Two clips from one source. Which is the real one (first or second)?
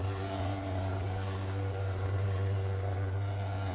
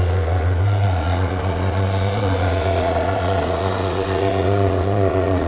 first